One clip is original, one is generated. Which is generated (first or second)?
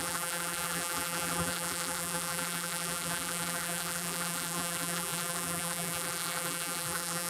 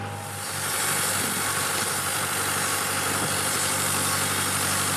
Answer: first